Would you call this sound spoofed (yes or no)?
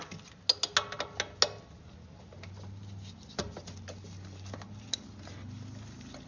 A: no